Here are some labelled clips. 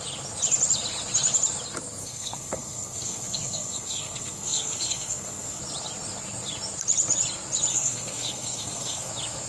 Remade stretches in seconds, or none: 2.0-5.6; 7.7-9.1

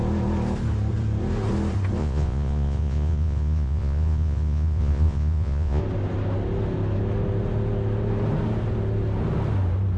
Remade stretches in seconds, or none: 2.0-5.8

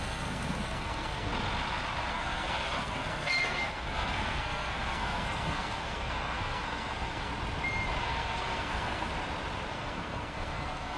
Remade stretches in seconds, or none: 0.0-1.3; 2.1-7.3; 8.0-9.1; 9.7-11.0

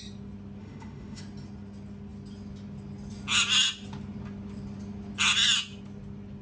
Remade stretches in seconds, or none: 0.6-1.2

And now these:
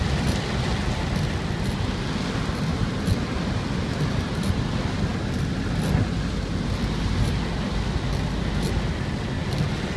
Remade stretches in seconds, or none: none

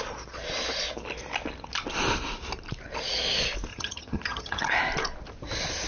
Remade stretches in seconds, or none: 3.7-4.7

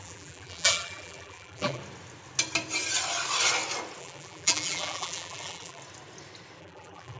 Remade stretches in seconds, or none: 0.0-1.8; 4.0-5.8; 6.6-7.2